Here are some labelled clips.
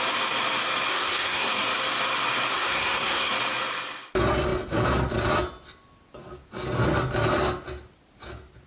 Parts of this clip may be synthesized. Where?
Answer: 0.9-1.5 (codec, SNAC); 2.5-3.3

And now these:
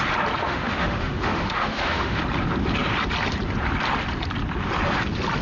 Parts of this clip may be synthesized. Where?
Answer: 0.4-2.2 (autoencoder, DAC-VAE)